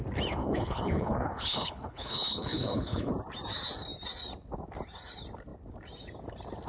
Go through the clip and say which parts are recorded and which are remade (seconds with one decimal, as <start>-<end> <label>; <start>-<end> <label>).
0.0-0.4 recorded; 0.4-3.1 remade; 3.1-6.7 recorded

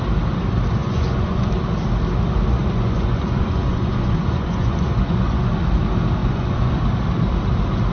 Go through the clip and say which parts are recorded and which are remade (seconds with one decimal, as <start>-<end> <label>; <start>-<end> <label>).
0.0-0.8 recorded; 0.8-1.5 remade; 1.5-2.6 recorded; 2.6-5.5 remade; 5.5-6.2 recorded; 6.2-6.7 remade; 6.7-7.9 recorded